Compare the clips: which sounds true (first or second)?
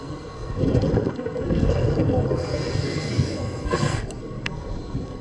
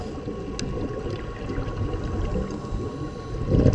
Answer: second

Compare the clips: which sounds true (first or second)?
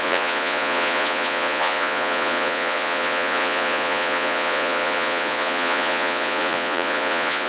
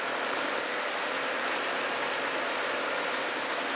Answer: second